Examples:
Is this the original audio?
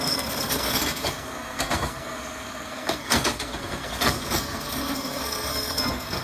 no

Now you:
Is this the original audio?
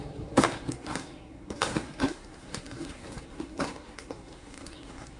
no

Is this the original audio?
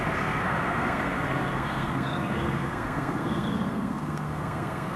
no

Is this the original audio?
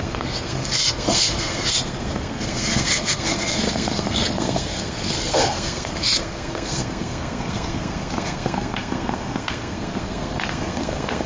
no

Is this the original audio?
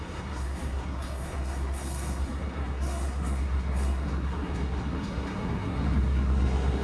no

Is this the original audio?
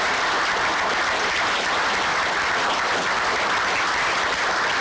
yes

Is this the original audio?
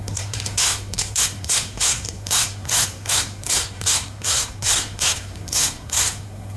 no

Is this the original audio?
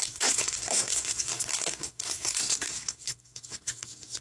no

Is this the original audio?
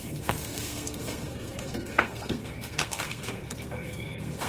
no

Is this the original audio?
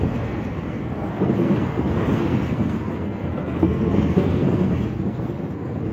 no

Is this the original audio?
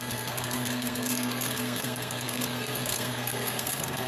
no